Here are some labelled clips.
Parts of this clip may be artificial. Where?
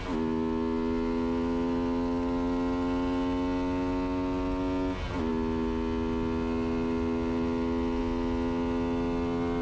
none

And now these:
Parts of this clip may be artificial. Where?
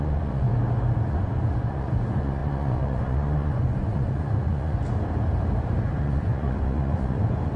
0.0-0.5 (vocoder, Vocos); 1.1-4.8; 6.0-7.6